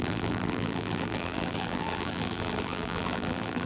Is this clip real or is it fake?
fake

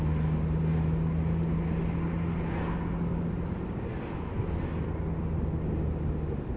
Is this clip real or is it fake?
real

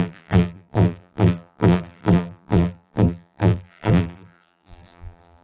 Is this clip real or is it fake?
fake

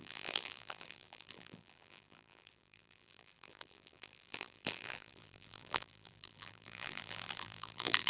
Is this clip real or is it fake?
fake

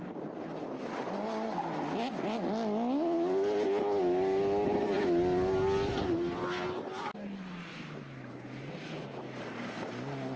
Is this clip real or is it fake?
real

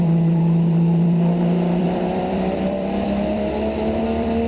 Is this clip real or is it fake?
fake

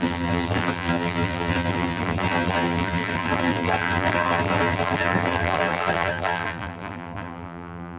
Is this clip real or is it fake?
fake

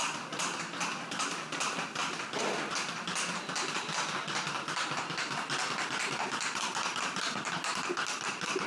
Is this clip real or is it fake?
real